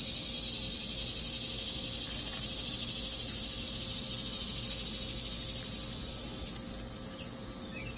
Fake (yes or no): no